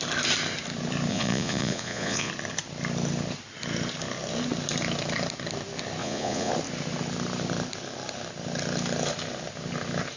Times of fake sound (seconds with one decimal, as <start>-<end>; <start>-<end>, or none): 1.1-2.3; 6.0-6.5